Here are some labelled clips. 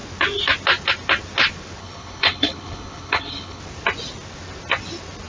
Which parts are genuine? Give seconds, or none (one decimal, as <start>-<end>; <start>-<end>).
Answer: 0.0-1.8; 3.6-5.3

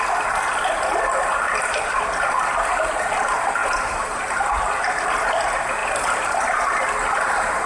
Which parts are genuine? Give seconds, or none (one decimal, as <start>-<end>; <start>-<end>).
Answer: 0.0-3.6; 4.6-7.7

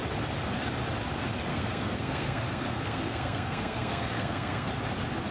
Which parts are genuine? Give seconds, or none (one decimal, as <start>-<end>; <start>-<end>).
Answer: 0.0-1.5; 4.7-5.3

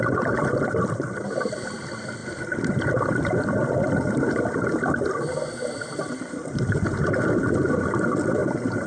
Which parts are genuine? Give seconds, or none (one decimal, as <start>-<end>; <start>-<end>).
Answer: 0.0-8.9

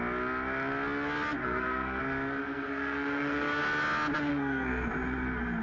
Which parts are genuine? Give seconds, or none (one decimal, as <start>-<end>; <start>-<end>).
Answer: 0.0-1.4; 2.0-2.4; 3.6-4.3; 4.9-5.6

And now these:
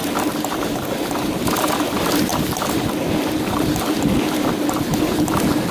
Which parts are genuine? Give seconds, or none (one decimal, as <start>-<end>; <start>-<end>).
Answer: 0.0-5.7

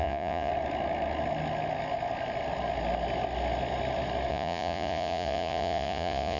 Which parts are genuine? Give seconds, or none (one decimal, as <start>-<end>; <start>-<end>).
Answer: 0.5-4.3